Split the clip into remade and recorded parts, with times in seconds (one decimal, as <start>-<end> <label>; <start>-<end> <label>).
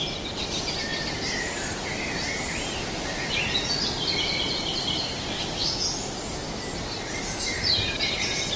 0.0-8.6 recorded